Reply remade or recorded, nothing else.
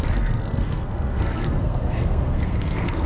remade